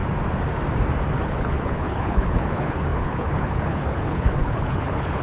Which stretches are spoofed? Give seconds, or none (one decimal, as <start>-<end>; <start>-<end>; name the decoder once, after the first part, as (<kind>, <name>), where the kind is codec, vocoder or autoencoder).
1.2-5.2 (codec, HILCodec)